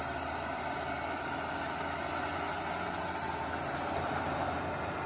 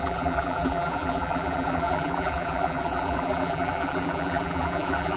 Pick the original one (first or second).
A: first